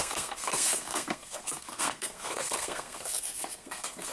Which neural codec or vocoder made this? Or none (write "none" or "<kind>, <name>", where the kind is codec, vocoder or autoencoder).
codec, SNAC